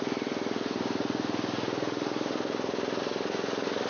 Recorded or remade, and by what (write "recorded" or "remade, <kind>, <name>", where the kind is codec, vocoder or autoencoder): recorded